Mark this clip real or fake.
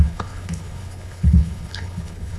fake